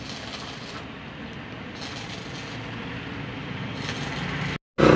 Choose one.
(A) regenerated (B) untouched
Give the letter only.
B